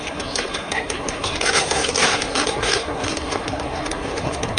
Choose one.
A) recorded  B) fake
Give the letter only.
B